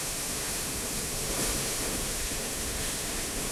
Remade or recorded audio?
remade